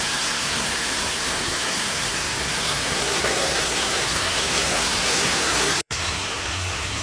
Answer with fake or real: fake